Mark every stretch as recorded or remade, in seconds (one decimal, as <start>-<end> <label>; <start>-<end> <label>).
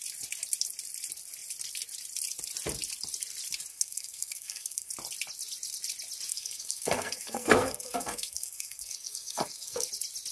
0.0-3.7 recorded; 3.7-4.9 remade; 4.9-6.3 recorded; 6.3-9.9 remade; 9.9-10.3 recorded